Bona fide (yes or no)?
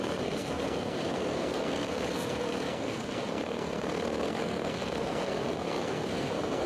no